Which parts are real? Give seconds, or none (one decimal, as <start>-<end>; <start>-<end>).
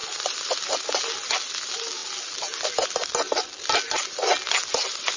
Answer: 0.7-5.2